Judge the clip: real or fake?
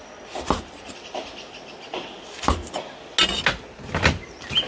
real